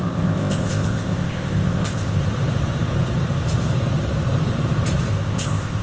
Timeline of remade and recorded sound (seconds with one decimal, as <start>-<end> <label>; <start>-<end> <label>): 0.0-2.2 remade; 2.2-5.1 recorded; 5.1-5.8 remade